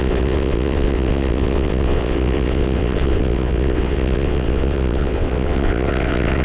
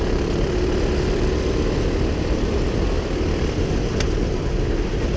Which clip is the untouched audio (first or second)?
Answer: second